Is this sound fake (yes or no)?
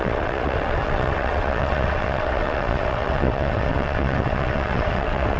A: yes